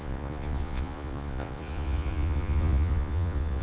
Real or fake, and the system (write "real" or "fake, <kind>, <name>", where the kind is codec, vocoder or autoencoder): fake, vocoder, Vocos